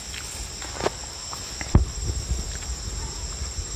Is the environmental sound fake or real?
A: real